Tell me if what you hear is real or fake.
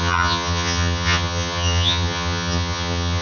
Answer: fake